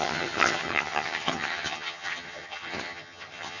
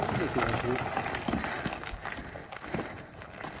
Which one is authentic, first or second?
second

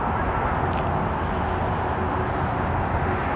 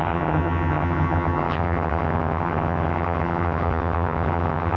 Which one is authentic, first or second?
first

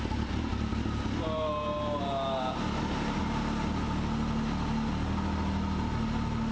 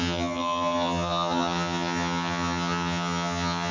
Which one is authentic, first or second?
first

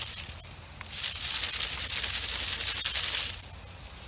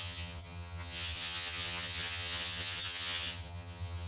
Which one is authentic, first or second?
first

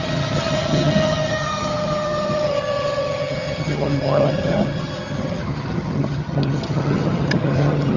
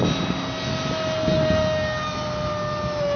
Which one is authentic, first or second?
second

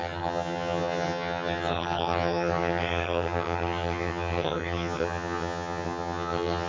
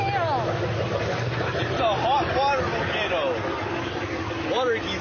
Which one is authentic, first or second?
second